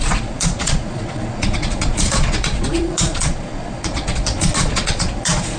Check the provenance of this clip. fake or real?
fake